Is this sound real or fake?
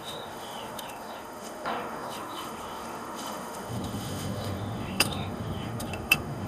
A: fake